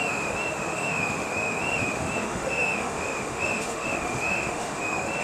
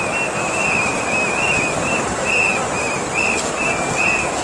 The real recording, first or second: second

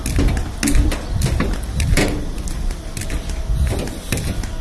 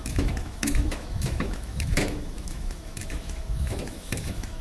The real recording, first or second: first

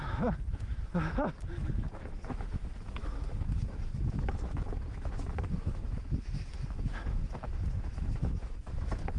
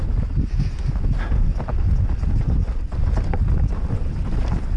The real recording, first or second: second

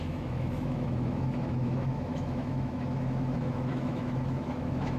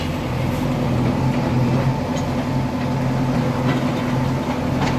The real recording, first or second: second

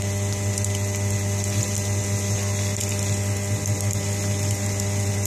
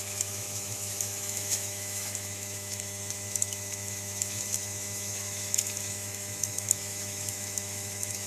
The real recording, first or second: first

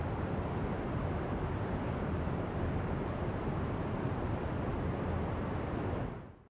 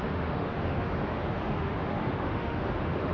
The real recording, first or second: first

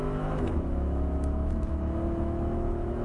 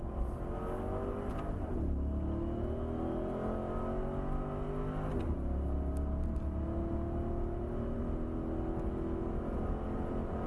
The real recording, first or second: second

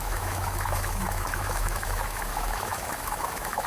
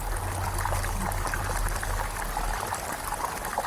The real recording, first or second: second